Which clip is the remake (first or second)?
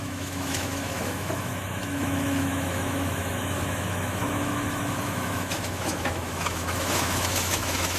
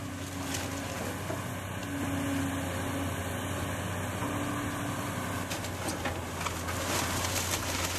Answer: first